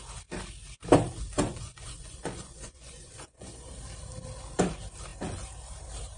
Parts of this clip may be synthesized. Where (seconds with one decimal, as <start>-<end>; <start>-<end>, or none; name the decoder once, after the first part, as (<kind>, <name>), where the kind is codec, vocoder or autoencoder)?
1.5-3.7 (vocoder, Vocos)